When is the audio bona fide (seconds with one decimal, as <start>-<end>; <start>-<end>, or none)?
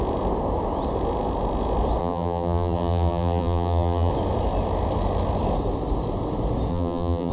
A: 0.0-2.0; 4.1-6.7